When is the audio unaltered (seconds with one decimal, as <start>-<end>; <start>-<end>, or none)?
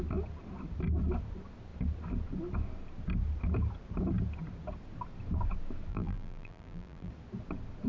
0.0-5.9; 7.1-7.9